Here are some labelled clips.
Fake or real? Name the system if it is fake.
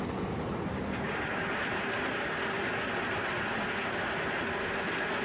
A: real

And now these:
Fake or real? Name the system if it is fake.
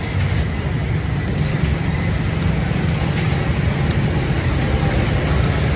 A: real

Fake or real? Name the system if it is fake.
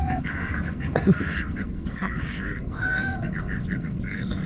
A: fake, codec, SNAC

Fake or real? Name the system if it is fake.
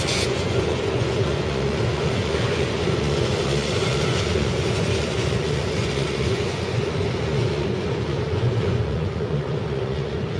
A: fake, vocoder, Vocos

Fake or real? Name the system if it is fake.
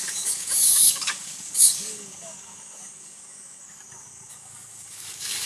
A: fake, codec, DAC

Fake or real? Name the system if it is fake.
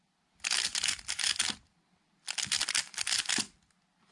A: real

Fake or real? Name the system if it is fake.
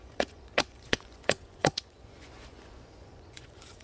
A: fake, vocoder, Vocos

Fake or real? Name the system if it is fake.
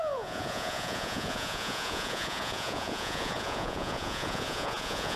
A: fake, vocoder, Vocos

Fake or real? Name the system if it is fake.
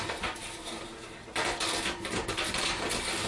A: real